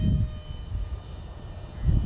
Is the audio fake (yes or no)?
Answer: no